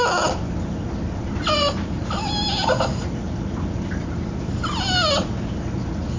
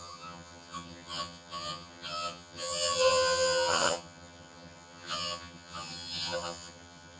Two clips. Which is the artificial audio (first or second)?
second